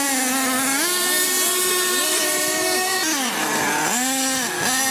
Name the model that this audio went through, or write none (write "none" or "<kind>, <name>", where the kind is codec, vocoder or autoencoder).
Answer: none